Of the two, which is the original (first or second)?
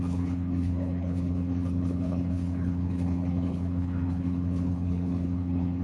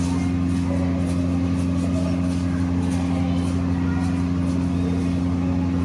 second